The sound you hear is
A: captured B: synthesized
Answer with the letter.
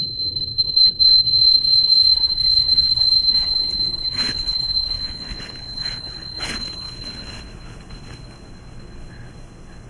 B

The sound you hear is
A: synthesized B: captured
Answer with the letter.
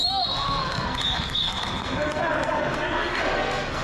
A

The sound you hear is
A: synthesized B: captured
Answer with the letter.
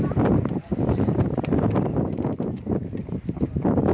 A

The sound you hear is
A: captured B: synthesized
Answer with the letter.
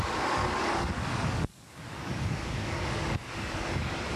B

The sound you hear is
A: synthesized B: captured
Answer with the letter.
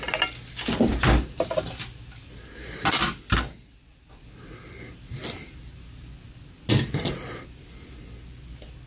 B